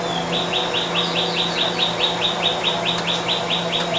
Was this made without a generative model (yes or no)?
yes